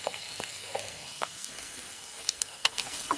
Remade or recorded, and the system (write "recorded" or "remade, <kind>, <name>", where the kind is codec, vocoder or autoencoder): remade, codec, SNAC